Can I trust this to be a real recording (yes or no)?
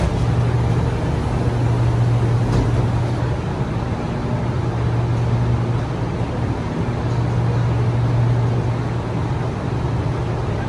yes